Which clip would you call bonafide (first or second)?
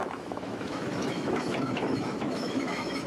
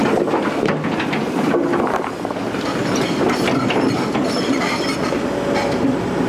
second